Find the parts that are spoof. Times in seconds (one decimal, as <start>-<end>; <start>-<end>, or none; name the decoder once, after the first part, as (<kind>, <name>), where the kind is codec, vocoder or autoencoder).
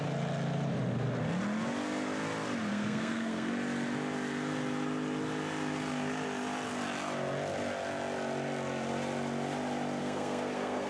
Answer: 2.7-3.5 (codec, SNAC); 10.0-10.9